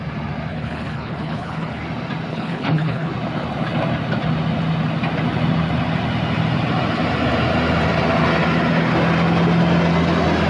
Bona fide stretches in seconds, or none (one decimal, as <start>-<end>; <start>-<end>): 0.0-0.5; 1.8-2.3; 3.1-10.5

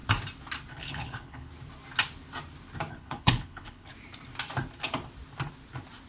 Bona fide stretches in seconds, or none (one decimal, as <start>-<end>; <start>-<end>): 0.0-0.7; 1.5-2.9; 3.9-6.1

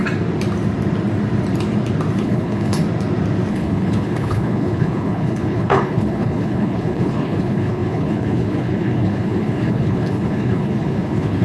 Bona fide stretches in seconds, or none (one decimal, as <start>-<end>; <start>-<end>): 0.0-2.2; 2.8-3.5

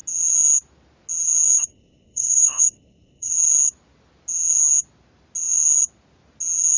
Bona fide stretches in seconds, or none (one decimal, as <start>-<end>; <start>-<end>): 0.0-1.5; 3.3-6.8

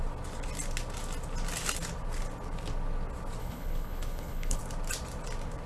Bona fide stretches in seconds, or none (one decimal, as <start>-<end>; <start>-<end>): 0.0-3.4; 4.6-5.7

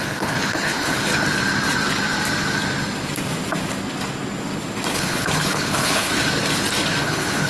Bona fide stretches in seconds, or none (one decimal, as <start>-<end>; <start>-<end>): 1.1-4.9; 6.1-7.0